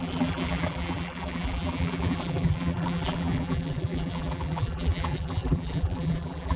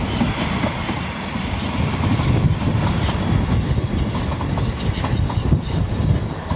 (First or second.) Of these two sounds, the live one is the second